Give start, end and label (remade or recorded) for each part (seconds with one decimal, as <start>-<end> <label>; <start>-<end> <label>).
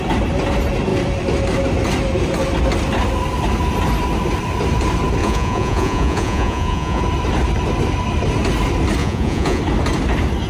0.0-5.2 recorded; 5.2-7.0 remade; 7.0-9.0 recorded; 9.0-9.6 remade; 9.6-10.5 recorded